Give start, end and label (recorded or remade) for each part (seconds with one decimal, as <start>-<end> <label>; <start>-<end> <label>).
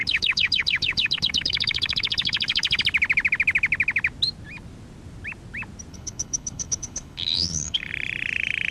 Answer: 0.0-2.8 remade; 2.8-5.9 recorded; 5.9-7.9 remade; 7.9-8.7 recorded